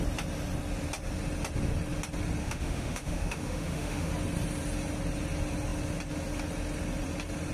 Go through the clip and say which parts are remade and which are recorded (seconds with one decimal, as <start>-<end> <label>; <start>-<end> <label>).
0.0-2.4 recorded; 2.4-4.1 remade; 4.1-7.5 recorded